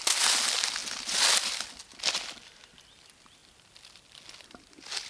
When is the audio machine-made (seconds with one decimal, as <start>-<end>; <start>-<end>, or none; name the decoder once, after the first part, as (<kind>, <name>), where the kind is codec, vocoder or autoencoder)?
none